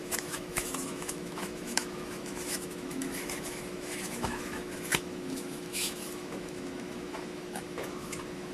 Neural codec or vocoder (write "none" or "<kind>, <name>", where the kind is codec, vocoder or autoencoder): autoencoder, DAC-VAE